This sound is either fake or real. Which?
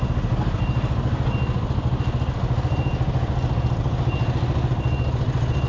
real